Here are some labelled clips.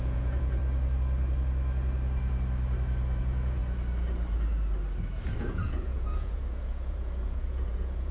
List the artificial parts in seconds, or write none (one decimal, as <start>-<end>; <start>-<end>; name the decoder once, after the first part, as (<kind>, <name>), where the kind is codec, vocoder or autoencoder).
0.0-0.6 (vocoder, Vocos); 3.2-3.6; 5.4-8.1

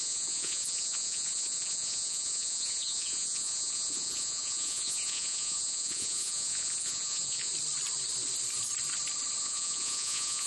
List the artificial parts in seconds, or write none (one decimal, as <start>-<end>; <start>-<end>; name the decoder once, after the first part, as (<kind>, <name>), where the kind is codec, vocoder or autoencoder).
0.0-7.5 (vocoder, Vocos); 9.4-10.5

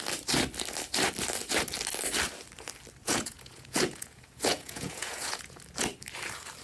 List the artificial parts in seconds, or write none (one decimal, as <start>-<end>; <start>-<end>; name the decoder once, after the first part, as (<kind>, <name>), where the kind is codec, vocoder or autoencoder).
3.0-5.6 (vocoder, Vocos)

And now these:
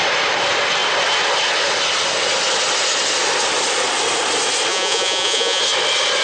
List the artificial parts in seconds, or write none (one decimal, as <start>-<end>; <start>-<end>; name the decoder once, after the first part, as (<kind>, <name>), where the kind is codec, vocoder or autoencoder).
4.7-5.6 (vocoder, Vocos)

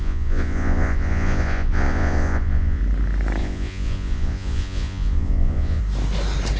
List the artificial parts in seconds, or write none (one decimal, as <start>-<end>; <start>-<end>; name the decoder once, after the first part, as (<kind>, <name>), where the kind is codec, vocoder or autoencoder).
0.0-2.8 (vocoder, Vocos); 3.4-5.8

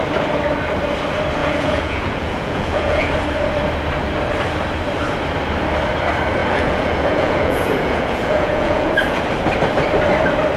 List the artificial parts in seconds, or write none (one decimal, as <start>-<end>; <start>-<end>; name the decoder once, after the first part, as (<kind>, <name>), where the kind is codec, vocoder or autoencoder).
1.4-3.1 (vocoder, Vocos); 6.4-9.2

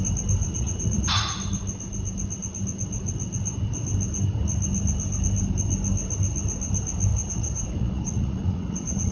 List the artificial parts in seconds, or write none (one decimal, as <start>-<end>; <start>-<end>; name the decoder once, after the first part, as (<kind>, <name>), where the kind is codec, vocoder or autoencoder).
0.4-1.4 (vocoder, Vocos); 7.1-9.1